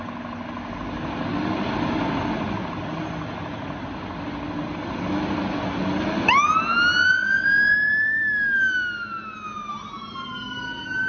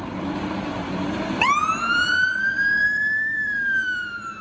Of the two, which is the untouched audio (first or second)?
first